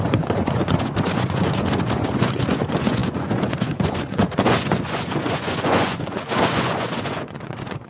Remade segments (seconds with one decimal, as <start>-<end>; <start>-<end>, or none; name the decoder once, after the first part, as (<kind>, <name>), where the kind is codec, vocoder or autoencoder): 0.0-7.9 (vocoder, Vocos)